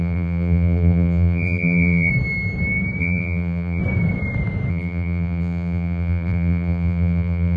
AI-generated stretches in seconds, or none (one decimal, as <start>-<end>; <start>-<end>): 0.0-2.1; 3.0-3.8; 4.7-7.6